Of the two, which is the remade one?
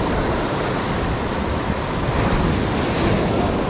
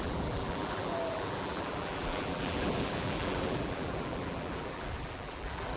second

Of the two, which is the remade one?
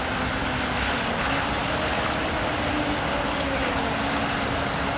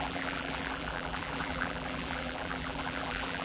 second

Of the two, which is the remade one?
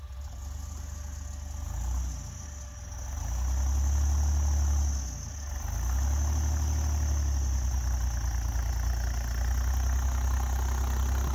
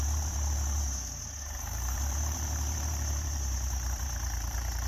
second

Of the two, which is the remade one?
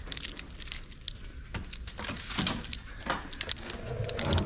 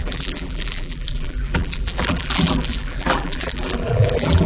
second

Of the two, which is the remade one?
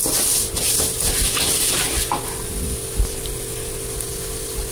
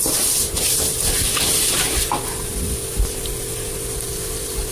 second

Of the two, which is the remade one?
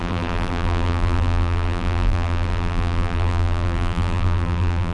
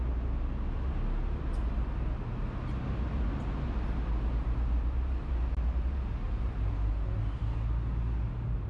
first